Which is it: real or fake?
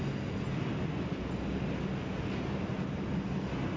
real